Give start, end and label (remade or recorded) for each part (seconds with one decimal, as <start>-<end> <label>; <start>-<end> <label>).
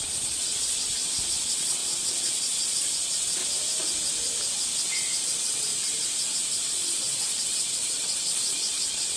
0.0-3.4 remade; 3.4-5.2 recorded; 5.2-5.7 remade; 5.7-6.7 recorded; 6.7-9.2 remade